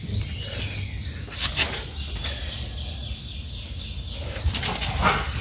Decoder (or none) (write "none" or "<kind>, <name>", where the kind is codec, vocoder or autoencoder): none